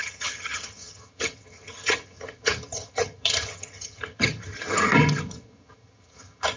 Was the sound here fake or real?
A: fake